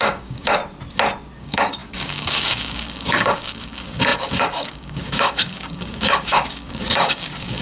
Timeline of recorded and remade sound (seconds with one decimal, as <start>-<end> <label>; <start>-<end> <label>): 0.0-0.6 remade; 0.6-1.4 recorded; 1.4-7.6 remade